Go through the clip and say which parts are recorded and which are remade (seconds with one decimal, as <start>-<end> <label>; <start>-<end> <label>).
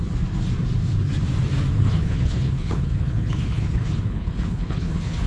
0.0-1.7 recorded; 1.7-5.3 remade